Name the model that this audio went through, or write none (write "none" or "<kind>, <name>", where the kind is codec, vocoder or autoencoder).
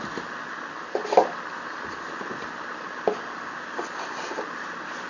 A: none